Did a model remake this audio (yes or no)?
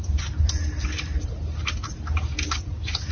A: no